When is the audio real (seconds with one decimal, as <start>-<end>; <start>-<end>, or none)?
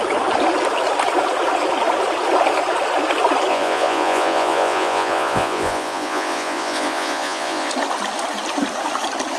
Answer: 0.0-3.5; 7.7-9.4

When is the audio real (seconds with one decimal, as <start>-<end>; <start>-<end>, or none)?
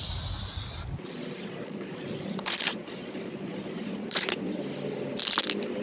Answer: 0.0-1.4; 4.6-5.8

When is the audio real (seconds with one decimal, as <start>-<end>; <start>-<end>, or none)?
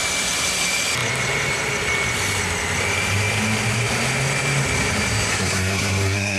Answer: 0.0-5.3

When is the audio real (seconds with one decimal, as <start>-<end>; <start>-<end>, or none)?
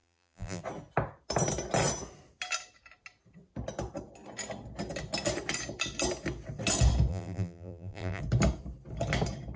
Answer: 0.6-7.1; 8.2-9.6